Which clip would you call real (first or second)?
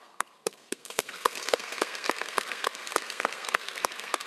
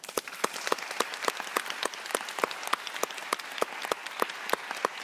second